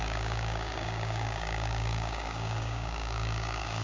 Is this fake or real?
fake